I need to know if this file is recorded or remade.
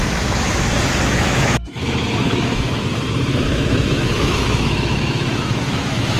remade